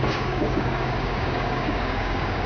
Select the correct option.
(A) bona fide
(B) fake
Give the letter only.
B